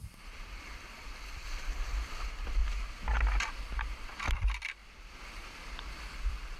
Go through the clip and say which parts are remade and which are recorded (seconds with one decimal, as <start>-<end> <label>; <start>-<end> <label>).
0.0-2.6 remade; 2.6-3.5 recorded; 3.5-4.8 remade; 4.8-5.9 recorded; 5.9-6.6 remade